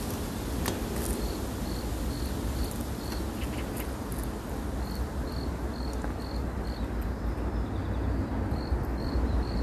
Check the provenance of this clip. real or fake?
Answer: real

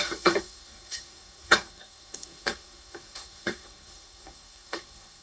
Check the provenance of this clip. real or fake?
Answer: fake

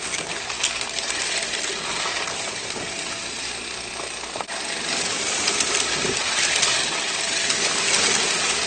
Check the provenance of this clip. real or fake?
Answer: real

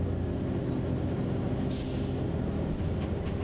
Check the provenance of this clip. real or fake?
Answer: real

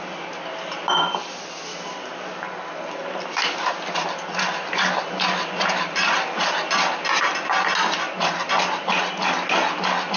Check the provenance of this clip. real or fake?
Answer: real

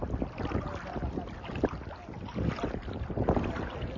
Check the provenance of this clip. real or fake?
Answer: real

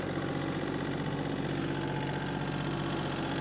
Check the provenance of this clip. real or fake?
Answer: real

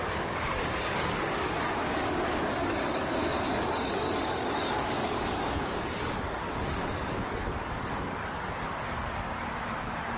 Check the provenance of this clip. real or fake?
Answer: fake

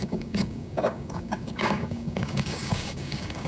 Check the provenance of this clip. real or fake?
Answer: fake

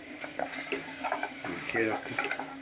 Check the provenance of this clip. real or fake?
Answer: fake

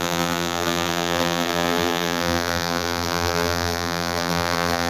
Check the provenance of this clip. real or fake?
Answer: fake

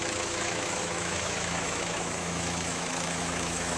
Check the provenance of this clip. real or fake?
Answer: fake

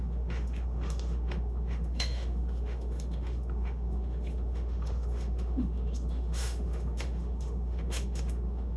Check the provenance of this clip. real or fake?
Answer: fake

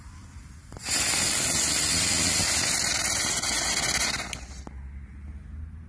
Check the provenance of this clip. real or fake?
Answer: real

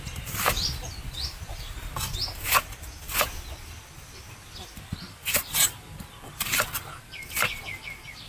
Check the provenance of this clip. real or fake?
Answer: real